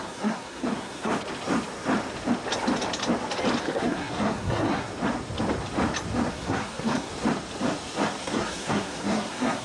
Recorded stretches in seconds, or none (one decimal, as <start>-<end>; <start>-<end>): 1.1-3.6; 4.9-6.3; 7.1-8.2